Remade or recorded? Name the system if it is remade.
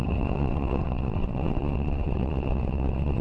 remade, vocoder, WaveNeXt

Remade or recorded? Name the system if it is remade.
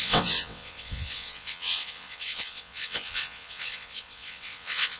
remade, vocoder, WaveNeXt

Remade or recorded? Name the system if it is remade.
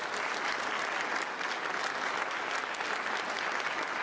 recorded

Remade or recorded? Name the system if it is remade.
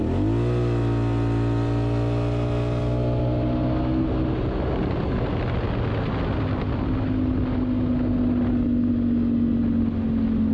recorded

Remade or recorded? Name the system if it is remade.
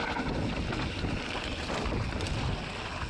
recorded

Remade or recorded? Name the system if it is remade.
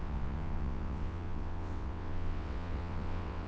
remade, vocoder, WaveNeXt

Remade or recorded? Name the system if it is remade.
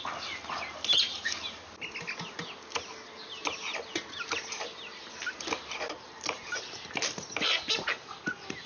recorded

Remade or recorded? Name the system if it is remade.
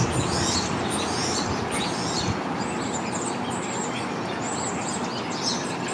recorded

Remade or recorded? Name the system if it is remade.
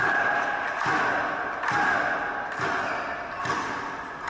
recorded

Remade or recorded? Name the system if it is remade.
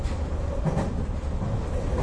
recorded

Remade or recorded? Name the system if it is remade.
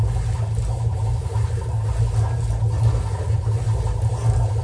recorded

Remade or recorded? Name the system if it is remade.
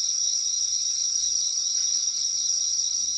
remade, vocoder, WaveNeXt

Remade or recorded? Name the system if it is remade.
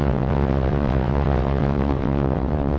remade, vocoder, WaveNeXt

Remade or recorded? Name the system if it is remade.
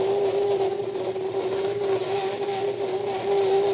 recorded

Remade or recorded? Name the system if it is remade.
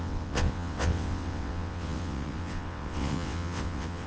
remade, vocoder, WaveNeXt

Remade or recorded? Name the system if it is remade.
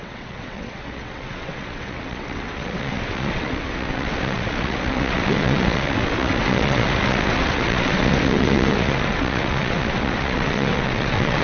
remade, vocoder, WaveNeXt